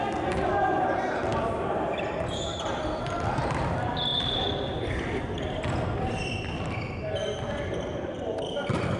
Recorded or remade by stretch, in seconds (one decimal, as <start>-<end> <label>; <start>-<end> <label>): 0.0-1.3 recorded; 1.3-2.2 remade; 2.2-4.1 recorded; 4.1-4.9 remade; 4.9-9.0 recorded